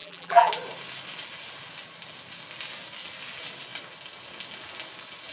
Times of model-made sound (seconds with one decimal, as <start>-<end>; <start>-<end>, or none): 0.0-0.5